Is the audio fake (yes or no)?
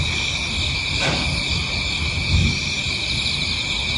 no